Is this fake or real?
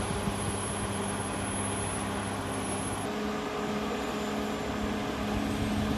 real